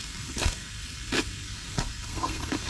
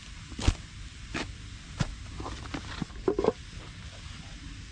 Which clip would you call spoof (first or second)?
first